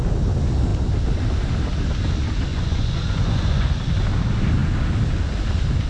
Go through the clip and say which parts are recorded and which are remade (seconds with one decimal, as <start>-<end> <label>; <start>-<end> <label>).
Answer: 0.0-2.5 recorded; 2.5-3.9 remade; 3.9-5.9 recorded